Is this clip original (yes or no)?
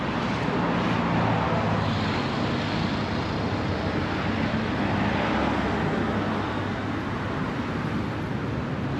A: yes